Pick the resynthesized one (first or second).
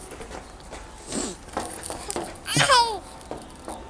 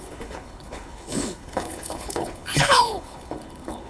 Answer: second